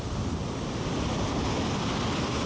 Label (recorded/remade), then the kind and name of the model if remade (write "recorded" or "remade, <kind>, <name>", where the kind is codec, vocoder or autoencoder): recorded